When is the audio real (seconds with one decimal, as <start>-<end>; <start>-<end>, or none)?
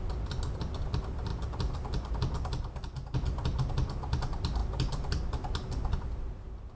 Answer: 0.0-6.8